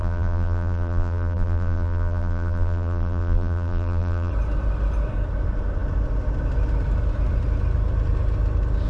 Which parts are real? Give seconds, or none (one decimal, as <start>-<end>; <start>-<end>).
4.3-8.9